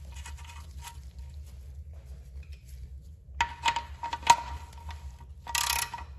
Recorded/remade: recorded